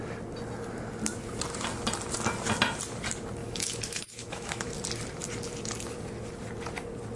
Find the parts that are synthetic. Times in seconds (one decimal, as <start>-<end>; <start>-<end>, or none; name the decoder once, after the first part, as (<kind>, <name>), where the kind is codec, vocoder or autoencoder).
3.4-4.7 (autoencoder, DAC-VAE)